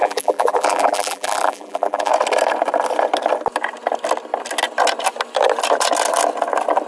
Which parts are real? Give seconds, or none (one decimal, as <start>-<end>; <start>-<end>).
2.1-6.9